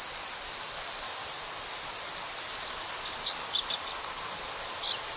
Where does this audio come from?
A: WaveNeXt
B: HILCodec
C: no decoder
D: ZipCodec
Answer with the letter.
C